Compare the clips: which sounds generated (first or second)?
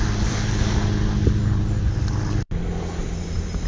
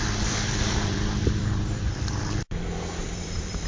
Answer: second